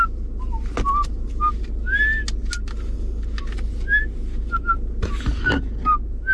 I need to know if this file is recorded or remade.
recorded